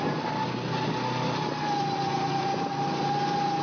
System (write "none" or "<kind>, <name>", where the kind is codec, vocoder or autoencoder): none